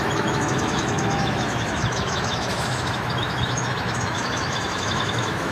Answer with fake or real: fake